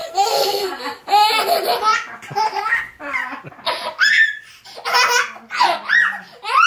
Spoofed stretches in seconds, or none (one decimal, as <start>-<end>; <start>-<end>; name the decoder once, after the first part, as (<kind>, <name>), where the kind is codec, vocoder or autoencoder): 0.0-0.8 (codec, SNAC)